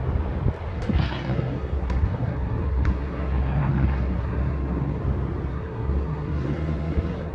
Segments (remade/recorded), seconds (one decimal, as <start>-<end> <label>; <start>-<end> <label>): 0.0-0.7 recorded; 0.7-5.0 remade; 5.0-5.5 recorded; 5.5-7.3 remade